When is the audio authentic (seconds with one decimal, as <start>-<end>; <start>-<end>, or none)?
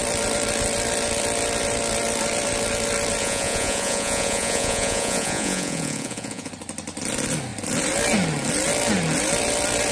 0.0-3.2; 6.5-9.9